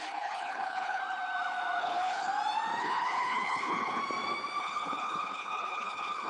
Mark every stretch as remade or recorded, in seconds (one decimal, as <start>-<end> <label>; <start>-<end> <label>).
0.0-1.0 remade; 1.0-1.8 recorded; 1.8-2.3 remade; 2.3-2.8 recorded; 2.8-4.0 remade; 4.0-4.6 recorded; 4.6-6.3 remade